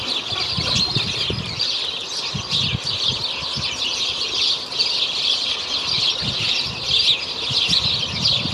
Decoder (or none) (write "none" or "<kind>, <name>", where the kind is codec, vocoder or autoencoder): none